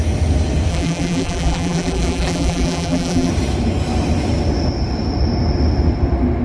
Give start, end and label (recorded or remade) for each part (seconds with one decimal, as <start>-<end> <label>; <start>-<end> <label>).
0.0-0.7 recorded; 0.7-3.3 remade; 3.3-6.4 recorded